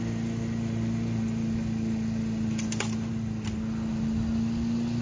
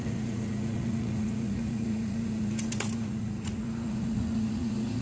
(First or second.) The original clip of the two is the first